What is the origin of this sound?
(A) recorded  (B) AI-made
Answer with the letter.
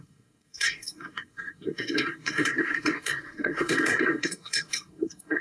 B